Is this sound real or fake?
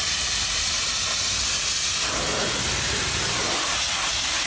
real